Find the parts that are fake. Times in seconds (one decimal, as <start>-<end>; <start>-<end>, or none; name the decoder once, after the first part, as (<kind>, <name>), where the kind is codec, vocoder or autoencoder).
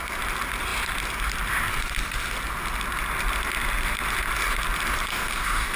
5.1-5.8 (codec, DAC)